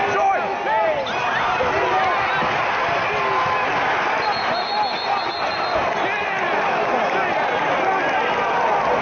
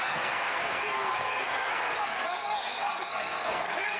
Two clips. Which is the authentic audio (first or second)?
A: first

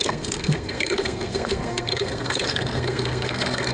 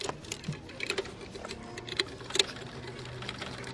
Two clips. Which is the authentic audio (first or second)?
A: second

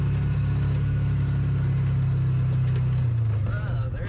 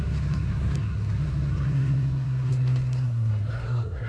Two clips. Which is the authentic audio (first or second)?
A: first